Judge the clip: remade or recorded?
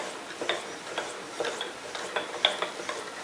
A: recorded